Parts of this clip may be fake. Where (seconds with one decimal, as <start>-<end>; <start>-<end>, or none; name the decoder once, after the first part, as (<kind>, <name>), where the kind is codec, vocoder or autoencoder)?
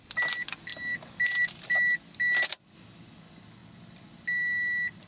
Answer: none